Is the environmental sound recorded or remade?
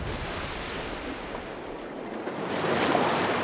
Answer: recorded